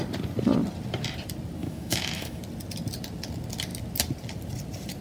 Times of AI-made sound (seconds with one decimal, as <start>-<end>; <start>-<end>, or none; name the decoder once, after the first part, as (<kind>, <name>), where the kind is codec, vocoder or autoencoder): 1.6-2.4 (autoencoder, DAC-VAE)